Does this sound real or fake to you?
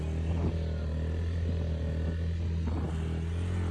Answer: real